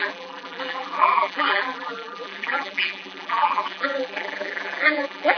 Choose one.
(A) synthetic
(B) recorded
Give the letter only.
A